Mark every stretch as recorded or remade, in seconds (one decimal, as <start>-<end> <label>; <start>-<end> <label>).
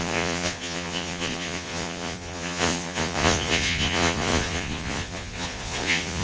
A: 0.0-6.2 remade